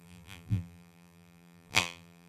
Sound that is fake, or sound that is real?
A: fake